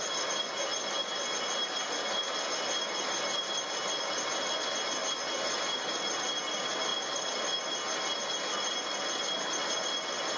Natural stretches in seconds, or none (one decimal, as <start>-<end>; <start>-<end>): 0.0-10.4